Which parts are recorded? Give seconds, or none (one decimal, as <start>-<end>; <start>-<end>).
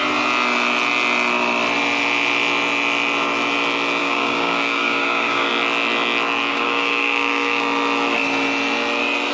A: 0.0-4.0; 5.5-6.5; 7.6-9.3